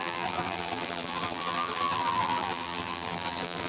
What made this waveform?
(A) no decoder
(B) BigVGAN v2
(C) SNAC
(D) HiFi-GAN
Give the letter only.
B